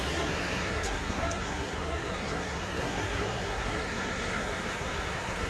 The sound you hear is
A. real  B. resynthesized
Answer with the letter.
B